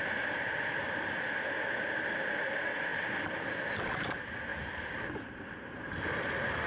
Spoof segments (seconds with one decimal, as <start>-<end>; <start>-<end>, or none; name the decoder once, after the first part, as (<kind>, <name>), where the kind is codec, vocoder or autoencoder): none